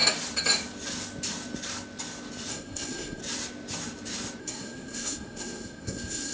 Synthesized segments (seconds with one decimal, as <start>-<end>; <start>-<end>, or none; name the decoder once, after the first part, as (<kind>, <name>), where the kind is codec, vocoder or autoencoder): 2.5-3.2 (codec, SNAC); 4.4-6.3